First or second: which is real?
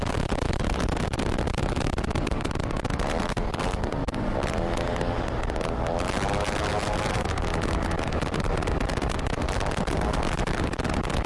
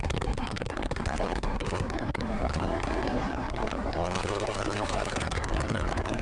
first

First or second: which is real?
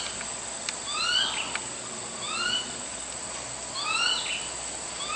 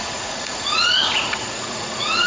first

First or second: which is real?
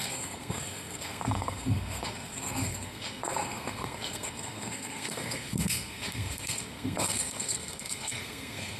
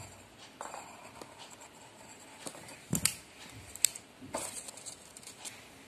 second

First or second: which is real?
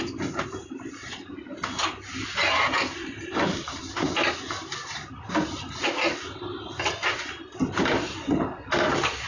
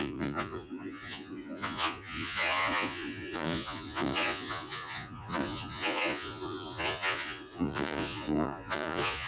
first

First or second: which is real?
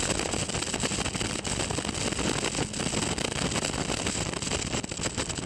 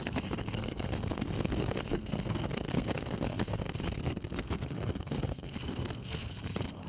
first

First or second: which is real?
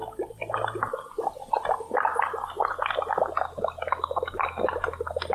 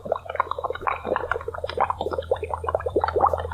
first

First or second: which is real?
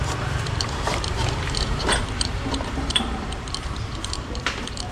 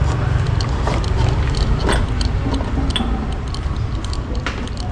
second